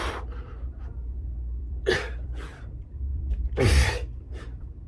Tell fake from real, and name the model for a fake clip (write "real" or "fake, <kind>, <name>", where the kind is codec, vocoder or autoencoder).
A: fake, vocoder, BigVGAN v2